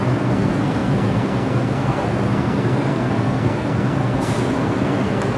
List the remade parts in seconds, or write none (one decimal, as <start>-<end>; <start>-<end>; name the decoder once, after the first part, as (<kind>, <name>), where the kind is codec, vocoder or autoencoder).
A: 0.0-5.4 (codec, SNAC)